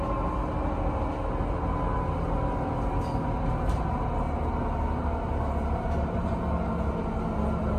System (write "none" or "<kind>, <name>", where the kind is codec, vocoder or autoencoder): none